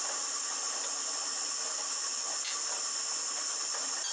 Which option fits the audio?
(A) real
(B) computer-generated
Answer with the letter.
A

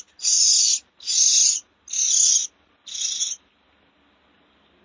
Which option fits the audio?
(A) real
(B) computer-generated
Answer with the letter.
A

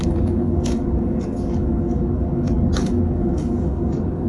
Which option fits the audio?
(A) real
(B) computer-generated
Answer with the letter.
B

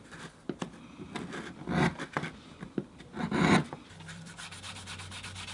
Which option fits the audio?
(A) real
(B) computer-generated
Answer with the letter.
B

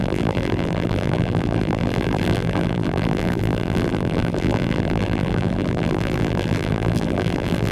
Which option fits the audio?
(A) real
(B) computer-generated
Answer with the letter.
B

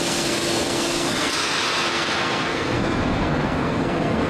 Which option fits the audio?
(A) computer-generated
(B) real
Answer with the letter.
A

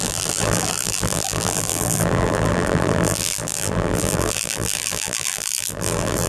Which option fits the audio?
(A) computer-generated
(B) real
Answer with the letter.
A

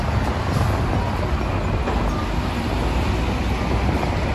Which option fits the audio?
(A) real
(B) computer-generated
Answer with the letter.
A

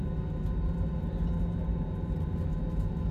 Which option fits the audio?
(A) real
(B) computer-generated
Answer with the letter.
A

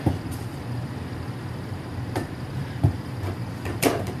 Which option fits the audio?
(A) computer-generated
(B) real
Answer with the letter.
A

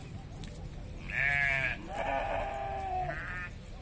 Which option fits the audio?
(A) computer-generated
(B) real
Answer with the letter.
B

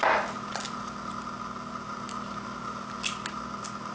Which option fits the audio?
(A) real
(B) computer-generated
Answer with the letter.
A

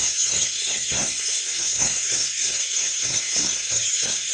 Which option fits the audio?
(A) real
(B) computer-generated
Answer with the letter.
B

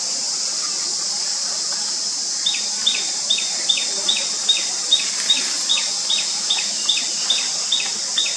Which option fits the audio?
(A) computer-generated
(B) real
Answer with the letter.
B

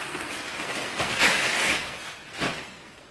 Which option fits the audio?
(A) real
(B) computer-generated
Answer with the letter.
B